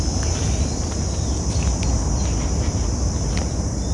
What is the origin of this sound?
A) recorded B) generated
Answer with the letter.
A